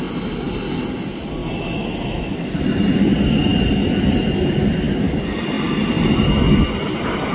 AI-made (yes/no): no